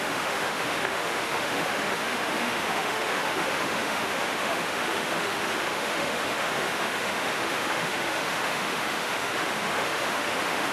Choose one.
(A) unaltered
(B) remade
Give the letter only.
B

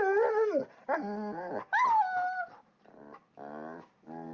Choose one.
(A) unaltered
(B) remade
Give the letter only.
A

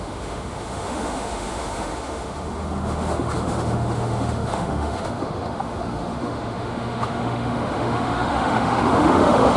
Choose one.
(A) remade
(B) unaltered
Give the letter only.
A